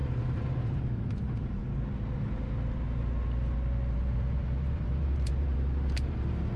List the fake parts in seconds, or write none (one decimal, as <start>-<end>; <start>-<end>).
0.0-1.6; 3.9-6.6